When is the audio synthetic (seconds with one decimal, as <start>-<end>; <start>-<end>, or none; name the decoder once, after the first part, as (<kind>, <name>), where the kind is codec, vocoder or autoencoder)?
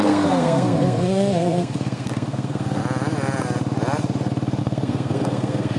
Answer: 0.0-2.8 (codec, SNAC); 4.6-5.8